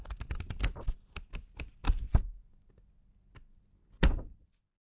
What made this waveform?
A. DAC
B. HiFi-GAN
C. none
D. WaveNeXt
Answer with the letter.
C